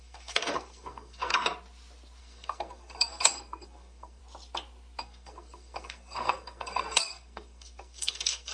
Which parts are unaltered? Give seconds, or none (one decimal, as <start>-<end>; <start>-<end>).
1.3-2.2; 4.2-5.0